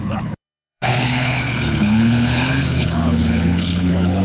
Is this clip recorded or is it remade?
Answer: remade